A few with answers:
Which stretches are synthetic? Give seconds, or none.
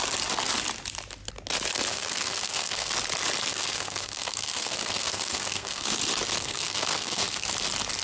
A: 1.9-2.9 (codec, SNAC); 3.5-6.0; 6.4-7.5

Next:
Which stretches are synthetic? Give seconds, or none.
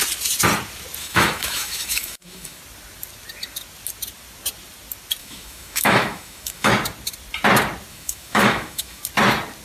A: 1.0-2.6 (autoencoder, DAC-VAE); 5.2-6.7; 7.9-9.0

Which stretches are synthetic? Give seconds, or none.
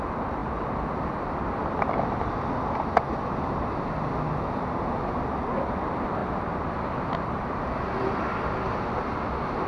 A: 0.4-2.4 (vocoder, BigVGAN v2); 6.2-9.2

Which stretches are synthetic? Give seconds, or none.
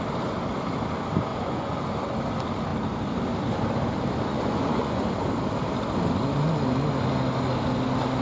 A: 1.3-1.8 (vocoder, Vocos); 4.3-5.0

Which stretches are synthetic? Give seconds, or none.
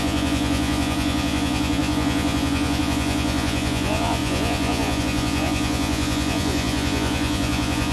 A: 0.0-7.9 (vocoder, Vocos)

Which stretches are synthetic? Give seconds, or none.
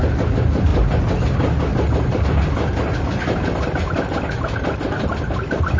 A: none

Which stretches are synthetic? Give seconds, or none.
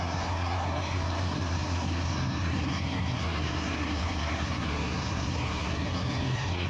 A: 0.0-6.7 (codec, SNAC)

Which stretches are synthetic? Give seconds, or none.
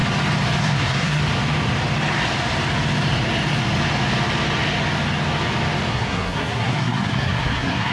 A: 0.6-1.2 (codec, SNAC); 5.9-7.9